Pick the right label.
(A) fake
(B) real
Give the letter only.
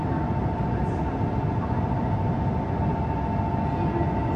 B